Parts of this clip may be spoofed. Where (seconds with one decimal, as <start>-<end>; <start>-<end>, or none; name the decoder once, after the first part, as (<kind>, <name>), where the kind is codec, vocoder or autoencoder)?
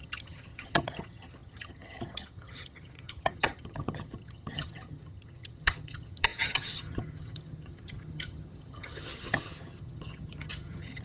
0.0-11.0 (vocoder, HiFi-GAN)